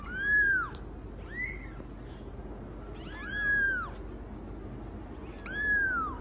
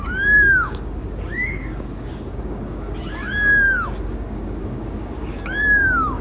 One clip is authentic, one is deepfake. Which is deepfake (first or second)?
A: second